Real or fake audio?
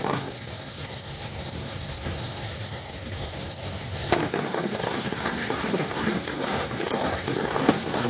fake